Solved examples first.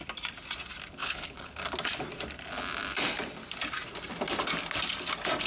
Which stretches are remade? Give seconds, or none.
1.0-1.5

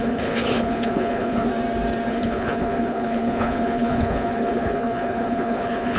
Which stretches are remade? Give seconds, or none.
0.0-1.5; 2.1-6.0

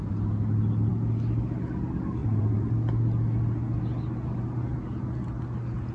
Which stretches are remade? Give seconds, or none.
2.2-2.7